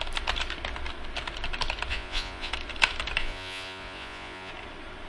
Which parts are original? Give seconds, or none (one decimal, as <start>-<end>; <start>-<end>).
0.0-1.9; 2.5-3.2; 4.5-5.1